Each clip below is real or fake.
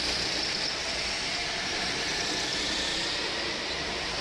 real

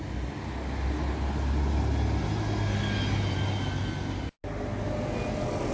real